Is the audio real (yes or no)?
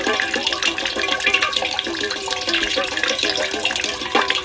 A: yes